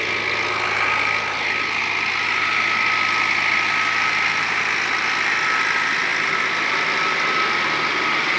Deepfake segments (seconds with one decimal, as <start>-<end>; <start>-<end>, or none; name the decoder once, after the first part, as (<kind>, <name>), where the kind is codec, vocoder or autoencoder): none